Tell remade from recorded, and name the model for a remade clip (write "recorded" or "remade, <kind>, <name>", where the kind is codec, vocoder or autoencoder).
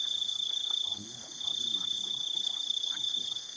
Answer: remade, codec, HILCodec